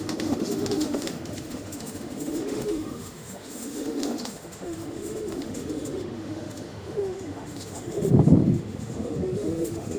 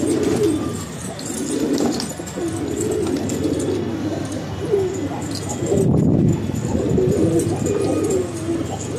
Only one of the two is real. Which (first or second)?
second